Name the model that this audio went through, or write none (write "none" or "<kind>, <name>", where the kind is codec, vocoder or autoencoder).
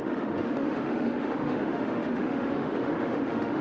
autoencoder, DAC-VAE